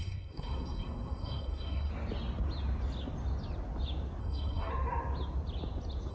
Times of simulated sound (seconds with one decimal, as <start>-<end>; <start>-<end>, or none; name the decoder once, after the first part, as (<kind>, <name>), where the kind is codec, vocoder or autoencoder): 0.0-1.9 (codec, SNAC); 4.2-4.7